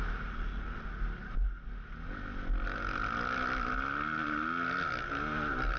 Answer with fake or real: real